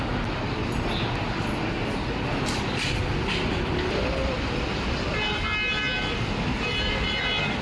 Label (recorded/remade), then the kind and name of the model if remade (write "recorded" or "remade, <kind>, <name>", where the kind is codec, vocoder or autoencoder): recorded